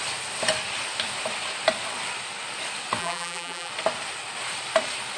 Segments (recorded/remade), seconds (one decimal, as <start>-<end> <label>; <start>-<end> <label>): 0.0-3.0 recorded; 3.0-3.7 remade; 3.7-5.2 recorded